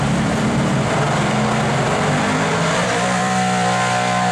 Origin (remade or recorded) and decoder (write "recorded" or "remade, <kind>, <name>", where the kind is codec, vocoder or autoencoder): remade, vocoder, BigVGAN v2